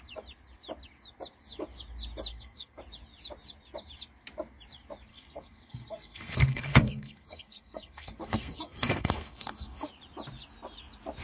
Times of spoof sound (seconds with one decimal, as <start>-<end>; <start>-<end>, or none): 2.3-2.8; 5.1-9.9